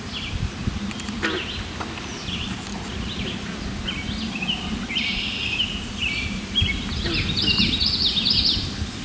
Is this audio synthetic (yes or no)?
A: no